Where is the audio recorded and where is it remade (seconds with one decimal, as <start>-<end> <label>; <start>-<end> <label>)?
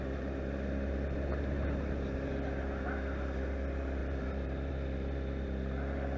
0.0-4.0 recorded; 4.0-4.7 remade; 4.7-6.2 recorded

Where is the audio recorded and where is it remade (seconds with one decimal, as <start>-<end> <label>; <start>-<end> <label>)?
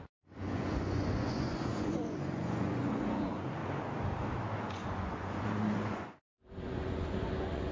0.0-3.6 remade; 3.6-4.6 recorded; 4.6-7.7 remade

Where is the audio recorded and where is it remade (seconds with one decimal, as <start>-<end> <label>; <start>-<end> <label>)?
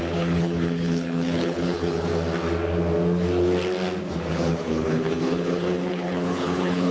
0.0-2.1 remade; 2.1-4.3 recorded; 4.3-6.9 remade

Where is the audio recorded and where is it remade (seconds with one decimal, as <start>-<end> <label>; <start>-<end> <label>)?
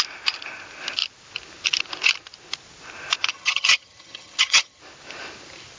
0.0-3.3 recorded; 3.3-4.8 remade; 4.8-5.8 recorded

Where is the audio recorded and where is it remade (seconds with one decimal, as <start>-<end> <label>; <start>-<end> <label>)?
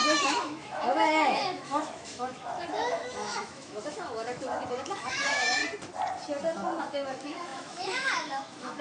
0.0-5.6 remade; 5.6-6.8 recorded; 6.8-8.8 remade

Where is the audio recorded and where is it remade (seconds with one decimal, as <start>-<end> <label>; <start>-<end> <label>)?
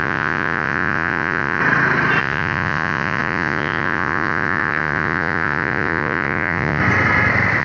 0.0-1.6 remade; 1.6-2.2 recorded; 2.2-6.8 remade; 6.8-7.6 recorded